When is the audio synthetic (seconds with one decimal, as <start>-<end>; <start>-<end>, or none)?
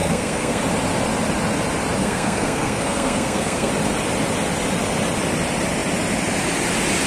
0.0-0.6; 2.0-3.7